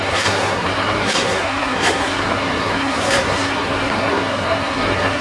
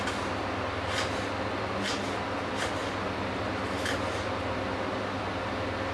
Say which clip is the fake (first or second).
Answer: first